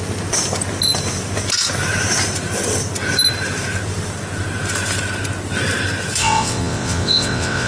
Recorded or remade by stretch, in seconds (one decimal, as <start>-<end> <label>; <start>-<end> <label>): 0.0-6.2 recorded; 6.2-7.7 remade